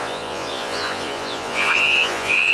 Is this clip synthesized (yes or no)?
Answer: yes